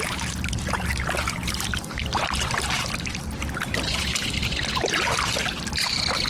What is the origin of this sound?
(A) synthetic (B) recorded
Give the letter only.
A